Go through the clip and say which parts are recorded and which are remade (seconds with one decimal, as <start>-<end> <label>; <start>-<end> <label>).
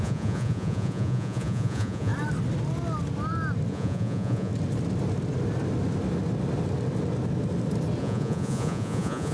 0.0-2.1 remade; 2.1-3.7 recorded; 3.7-4.5 remade; 4.5-8.0 recorded; 8.0-9.3 remade